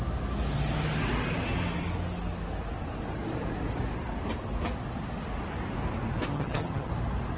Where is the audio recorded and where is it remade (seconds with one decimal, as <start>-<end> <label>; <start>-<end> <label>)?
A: 0.0-6.3 recorded; 6.3-6.9 remade; 6.9-7.4 recorded

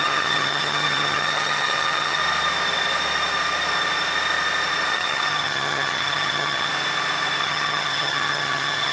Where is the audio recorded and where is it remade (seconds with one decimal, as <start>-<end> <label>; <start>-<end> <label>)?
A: 0.0-2.2 remade; 2.2-4.9 recorded; 4.9-6.7 remade; 6.7-7.4 recorded; 7.4-8.9 remade